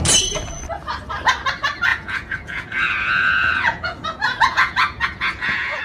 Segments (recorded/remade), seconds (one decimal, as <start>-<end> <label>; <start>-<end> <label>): 0.0-1.9 recorded; 1.9-5.8 remade